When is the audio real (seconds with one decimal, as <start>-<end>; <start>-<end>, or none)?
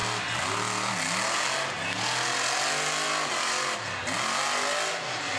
0.0-5.4